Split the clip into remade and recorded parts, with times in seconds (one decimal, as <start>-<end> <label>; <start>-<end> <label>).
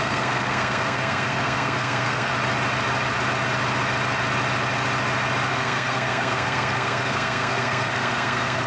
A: 0.0-2.3 remade; 2.3-5.5 recorded; 5.5-8.7 remade